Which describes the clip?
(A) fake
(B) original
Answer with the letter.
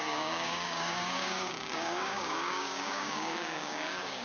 A